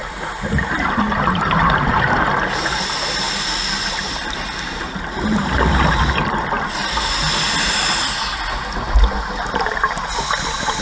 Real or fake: real